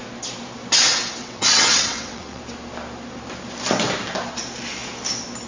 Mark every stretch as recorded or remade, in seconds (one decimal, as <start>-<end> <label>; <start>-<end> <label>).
0.0-1.2 recorded; 1.2-2.4 remade; 2.4-5.5 recorded